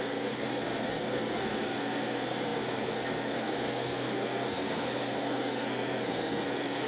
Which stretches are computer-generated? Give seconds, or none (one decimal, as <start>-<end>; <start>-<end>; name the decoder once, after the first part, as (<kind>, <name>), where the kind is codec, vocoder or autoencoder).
0.0-6.9 (codec, SNAC)